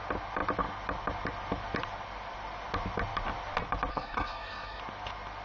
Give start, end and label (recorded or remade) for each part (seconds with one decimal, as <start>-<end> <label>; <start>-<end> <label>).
0.0-3.9 recorded; 3.9-4.8 remade; 4.8-5.4 recorded